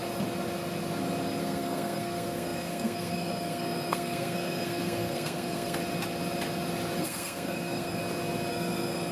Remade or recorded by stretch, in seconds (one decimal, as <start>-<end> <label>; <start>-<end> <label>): 0.0-1.4 recorded; 1.4-5.8 remade; 5.8-7.0 recorded; 7.0-8.0 remade; 8.0-8.5 recorded; 8.5-9.1 remade